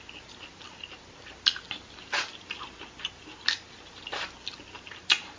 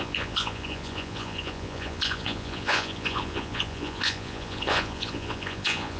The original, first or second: first